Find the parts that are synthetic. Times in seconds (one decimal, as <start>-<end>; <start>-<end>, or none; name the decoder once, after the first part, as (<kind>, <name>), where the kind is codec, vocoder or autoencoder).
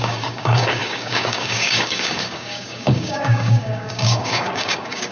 0.0-5.1 (codec, DAC)